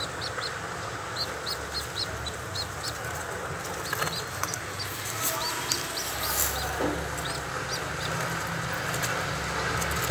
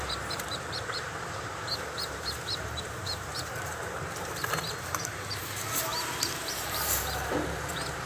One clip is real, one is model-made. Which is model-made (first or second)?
second